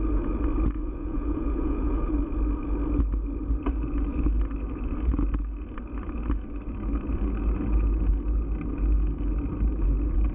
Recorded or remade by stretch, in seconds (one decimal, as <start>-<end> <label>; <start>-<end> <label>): 0.0-0.8 recorded; 0.8-2.1 remade; 2.1-10.3 recorded